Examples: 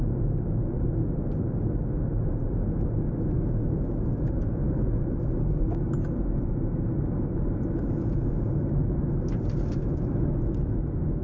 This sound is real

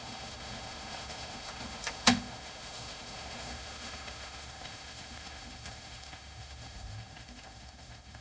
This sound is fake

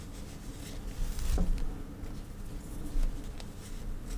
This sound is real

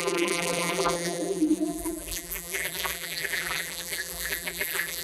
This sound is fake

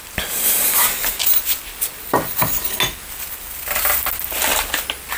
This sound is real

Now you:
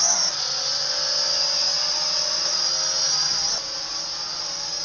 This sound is real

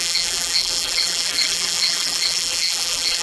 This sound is fake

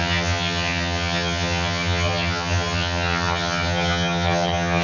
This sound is fake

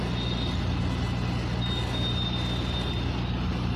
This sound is real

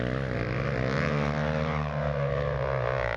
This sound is real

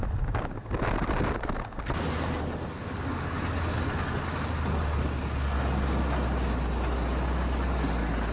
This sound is real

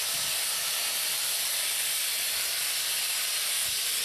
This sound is fake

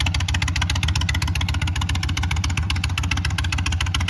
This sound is real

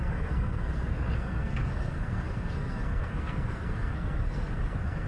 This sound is fake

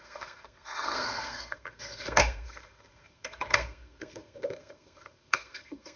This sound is fake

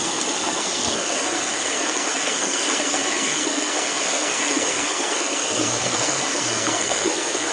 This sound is fake